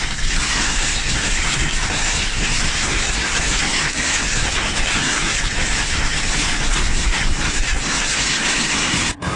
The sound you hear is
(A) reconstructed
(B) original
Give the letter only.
A